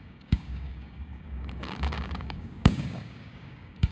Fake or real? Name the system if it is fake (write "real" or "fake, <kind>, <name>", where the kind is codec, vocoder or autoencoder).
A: fake, codec, DAC